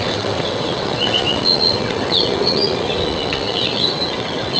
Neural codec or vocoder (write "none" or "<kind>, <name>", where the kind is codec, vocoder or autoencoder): vocoder, WaveNeXt